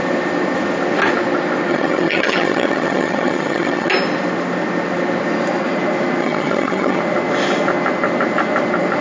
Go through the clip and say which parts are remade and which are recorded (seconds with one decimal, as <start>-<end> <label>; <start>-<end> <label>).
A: 0.0-1.7 recorded; 1.7-3.9 remade; 3.9-6.2 recorded; 6.2-7.0 remade; 7.0-9.0 recorded